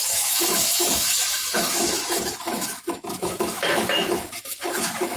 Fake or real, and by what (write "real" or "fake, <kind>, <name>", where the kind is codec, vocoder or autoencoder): fake, autoencoder, DAC-VAE